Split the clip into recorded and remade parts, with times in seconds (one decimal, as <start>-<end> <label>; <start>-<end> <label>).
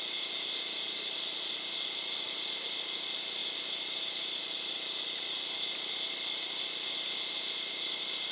0.0-8.3 recorded